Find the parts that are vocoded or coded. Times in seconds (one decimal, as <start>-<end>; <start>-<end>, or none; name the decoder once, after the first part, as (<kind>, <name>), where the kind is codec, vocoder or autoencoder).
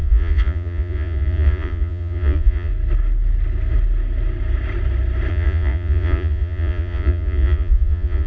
0.0-2.7 (vocoder, Vocos); 5.3-8.3